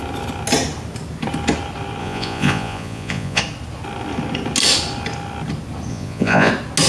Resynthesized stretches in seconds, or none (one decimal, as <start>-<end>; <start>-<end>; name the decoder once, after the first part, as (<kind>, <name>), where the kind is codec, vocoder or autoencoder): 2.0-3.4 (vocoder, Vocos); 5.9-6.5